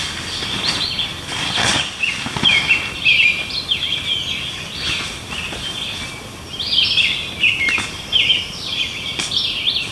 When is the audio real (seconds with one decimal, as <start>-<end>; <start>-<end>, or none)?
0.0-9.9